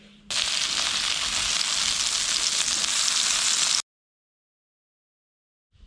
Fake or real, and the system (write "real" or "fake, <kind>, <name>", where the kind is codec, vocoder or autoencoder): real